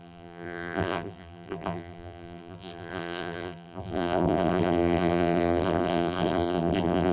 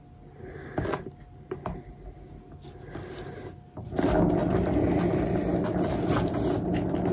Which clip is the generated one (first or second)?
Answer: first